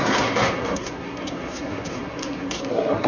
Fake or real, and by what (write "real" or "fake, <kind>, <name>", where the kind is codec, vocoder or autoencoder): fake, codec, SNAC